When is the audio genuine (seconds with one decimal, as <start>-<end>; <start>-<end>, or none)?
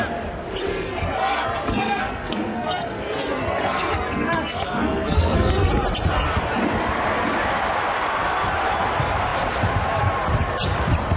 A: 0.0-0.7; 5.7-11.2